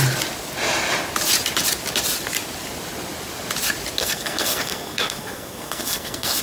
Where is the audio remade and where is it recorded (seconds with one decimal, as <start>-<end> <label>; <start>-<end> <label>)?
0.0-4.0 recorded; 4.0-6.4 remade